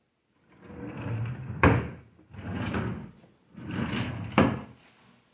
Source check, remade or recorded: recorded